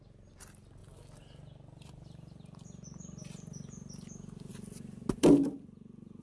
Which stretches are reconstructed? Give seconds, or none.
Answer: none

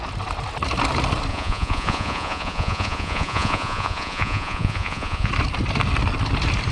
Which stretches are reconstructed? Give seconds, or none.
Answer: 1.3-5.3 (vocoder, Vocos)